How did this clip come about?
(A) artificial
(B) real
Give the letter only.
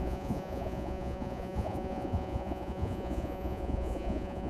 A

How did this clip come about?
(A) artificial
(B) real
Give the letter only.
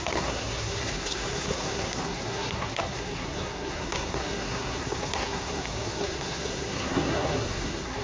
A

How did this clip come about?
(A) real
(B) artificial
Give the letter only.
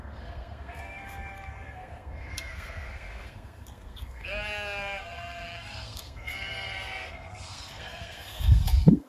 B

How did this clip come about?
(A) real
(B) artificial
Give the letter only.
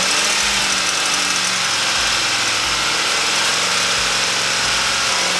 A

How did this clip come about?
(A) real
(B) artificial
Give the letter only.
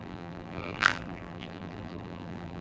B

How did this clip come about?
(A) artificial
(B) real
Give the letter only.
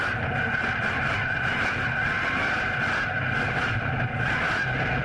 B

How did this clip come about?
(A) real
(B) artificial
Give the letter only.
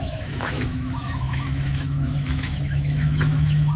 B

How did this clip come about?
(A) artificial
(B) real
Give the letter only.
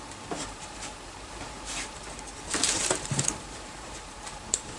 A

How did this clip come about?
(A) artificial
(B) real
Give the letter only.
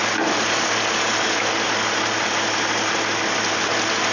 B